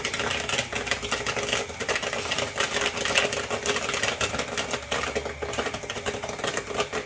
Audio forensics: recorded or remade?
recorded